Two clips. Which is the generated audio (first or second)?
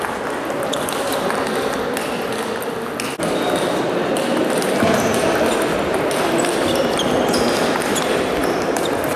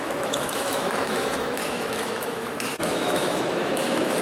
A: second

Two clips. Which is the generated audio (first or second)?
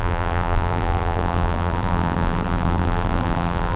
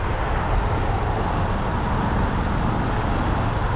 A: first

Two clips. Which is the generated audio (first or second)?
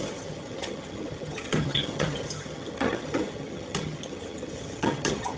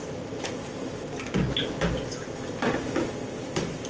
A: first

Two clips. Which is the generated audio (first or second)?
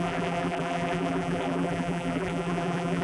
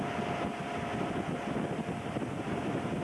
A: first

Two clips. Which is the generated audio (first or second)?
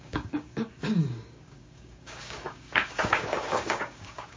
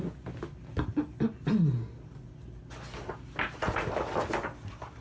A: first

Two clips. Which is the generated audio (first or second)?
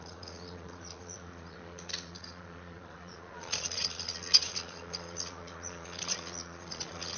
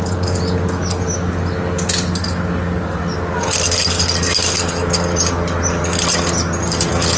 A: first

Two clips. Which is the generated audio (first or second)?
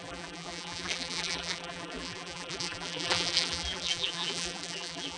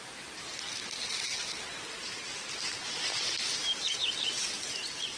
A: first